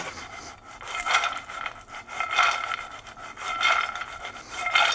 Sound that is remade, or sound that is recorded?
recorded